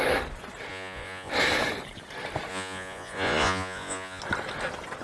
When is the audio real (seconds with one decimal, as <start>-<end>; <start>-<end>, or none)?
0.0-0.7; 1.3-2.5; 4.2-5.0